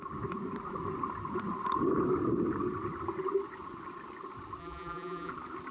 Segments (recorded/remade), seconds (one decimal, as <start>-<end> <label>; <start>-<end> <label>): 0.0-4.6 recorded; 4.6-5.3 remade; 5.3-5.7 recorded